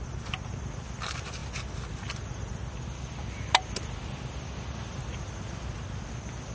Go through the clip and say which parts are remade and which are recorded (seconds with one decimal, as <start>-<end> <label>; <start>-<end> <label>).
0.0-6.5 recorded